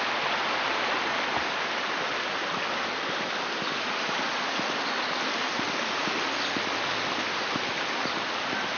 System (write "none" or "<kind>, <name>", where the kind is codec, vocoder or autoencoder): none